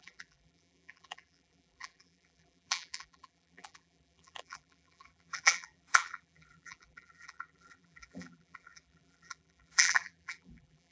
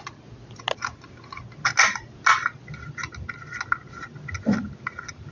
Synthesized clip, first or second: first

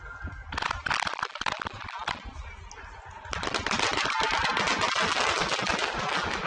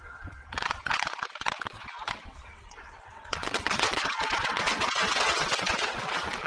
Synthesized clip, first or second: second